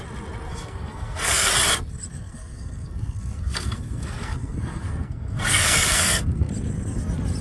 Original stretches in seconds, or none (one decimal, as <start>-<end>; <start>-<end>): 0.0-0.5; 1.5-2.1; 6.5-7.4